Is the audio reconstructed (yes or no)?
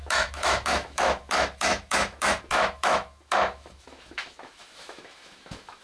yes